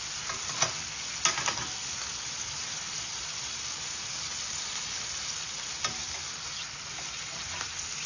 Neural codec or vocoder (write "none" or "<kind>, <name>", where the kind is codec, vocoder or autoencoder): none